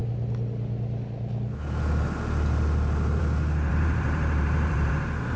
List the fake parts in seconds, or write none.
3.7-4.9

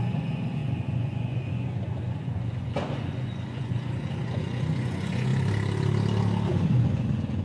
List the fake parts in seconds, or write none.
0.0-5.3; 6.5-7.4

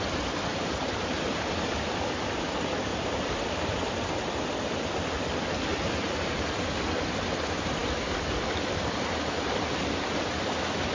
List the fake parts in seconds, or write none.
0.5-1.5; 2.9-4.3; 5.7-6.5

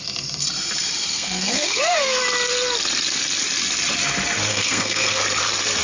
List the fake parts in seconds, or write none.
1.1-2.2; 4.5-5.2

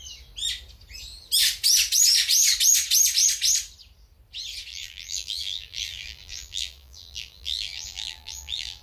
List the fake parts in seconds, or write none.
4.7-8.8